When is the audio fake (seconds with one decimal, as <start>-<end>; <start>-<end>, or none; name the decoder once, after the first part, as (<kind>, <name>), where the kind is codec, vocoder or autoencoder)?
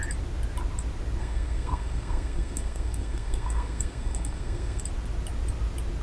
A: 1.2-4.8 (codec, SNAC)